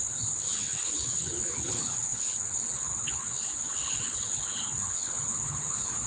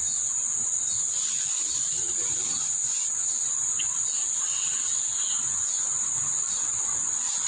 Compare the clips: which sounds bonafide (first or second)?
second